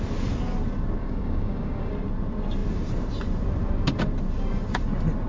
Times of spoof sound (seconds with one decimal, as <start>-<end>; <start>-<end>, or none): 1.0-1.9